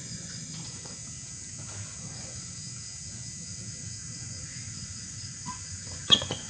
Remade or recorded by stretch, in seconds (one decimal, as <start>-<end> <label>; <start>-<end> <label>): 0.0-1.0 remade; 1.0-2.0 recorded; 2.0-2.6 remade; 2.6-4.1 recorded; 4.1-6.5 remade